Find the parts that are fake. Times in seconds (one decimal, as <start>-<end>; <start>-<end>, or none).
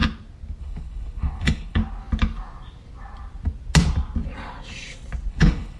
0.6-1.8; 5.3-5.8